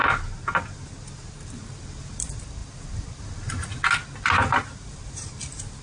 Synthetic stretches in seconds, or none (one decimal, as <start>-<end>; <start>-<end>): none